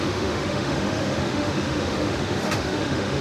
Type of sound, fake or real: fake